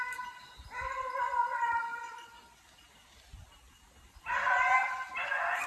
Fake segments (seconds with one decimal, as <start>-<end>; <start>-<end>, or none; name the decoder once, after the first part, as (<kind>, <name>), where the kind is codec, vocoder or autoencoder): none